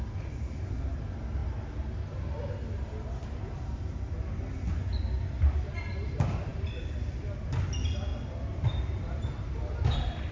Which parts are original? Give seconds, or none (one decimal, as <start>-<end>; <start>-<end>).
0.0-10.3